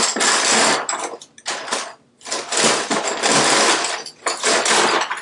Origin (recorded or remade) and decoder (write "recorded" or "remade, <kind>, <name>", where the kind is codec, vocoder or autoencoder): recorded